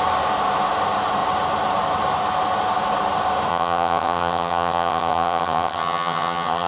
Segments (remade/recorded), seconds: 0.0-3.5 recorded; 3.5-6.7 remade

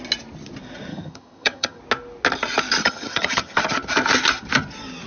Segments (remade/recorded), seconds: 0.0-0.9 recorded; 0.9-1.8 remade; 1.8-2.8 recorded; 2.8-3.6 remade; 3.6-5.1 recorded

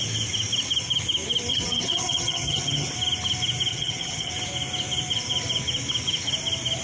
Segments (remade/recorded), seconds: 0.0-1.5 recorded; 1.5-2.9 remade; 2.9-3.7 recorded; 3.7-4.3 remade; 4.3-6.8 recorded

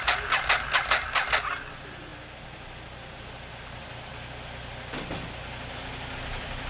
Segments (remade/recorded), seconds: 0.0-6.7 recorded

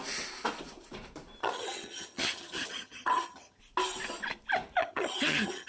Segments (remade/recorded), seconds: 0.0-1.4 recorded; 1.4-3.6 remade; 3.6-4.8 recorded; 4.8-5.7 remade

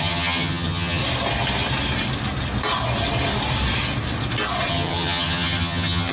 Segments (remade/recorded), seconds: 0.0-1.0 remade; 1.0-4.7 recorded; 4.7-6.1 remade